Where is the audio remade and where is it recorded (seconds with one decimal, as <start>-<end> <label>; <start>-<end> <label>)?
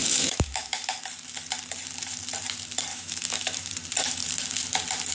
0.0-0.9 remade; 0.9-2.9 recorded; 2.9-3.7 remade; 3.7-5.1 recorded